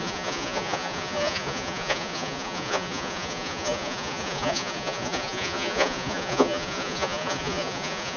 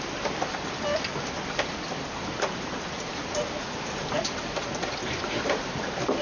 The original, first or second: second